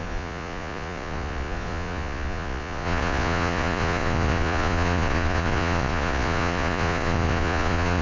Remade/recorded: remade